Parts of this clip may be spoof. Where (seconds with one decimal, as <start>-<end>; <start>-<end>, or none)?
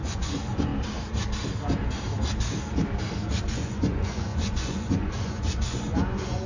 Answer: 0.0-0.7; 3.5-6.5